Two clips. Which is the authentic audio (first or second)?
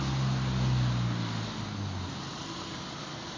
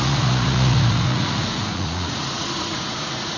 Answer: first